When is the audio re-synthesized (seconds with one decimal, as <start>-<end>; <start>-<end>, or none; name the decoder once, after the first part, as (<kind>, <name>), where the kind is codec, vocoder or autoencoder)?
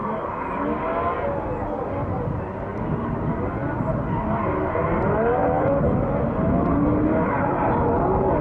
none